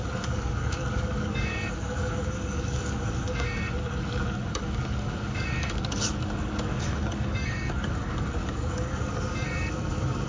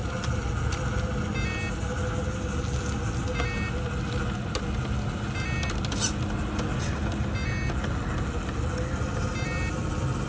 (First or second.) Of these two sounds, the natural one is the second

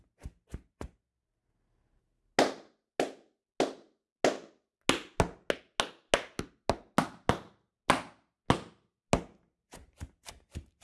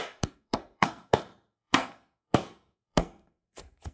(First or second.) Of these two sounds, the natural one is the first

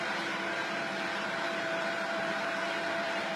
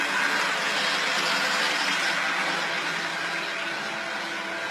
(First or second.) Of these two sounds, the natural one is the second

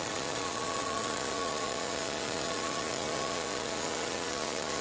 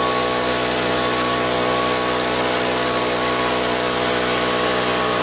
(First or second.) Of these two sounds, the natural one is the second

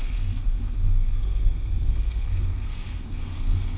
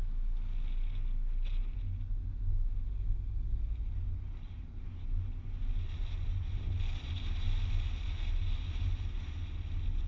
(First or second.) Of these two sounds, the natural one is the second